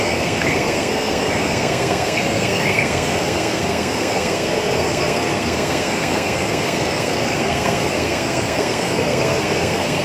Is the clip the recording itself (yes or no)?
no